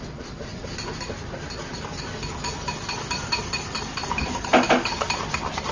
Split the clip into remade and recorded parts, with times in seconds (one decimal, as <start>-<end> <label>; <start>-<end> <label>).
0.0-5.7 recorded